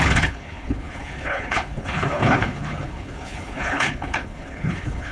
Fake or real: fake